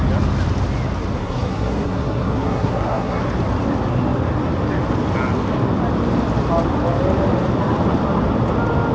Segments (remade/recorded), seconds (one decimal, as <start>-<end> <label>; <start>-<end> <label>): 0.0-1.2 recorded; 1.2-3.2 remade; 3.2-8.9 recorded